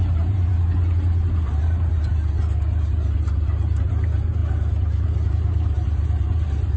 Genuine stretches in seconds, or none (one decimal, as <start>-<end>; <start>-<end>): 0.5-1.3; 2.1-3.7; 4.4-5.3

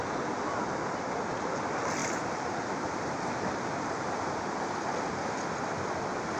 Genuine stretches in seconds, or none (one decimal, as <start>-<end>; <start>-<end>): 0.0-2.0; 4.3-6.4